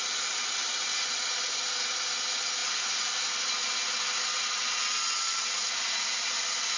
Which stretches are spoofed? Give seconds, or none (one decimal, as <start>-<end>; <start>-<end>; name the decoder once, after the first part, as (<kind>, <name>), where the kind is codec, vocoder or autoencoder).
none